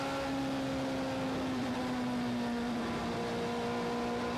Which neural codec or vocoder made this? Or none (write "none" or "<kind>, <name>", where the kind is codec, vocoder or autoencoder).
none